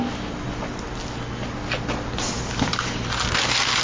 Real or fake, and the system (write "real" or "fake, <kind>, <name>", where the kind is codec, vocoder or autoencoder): real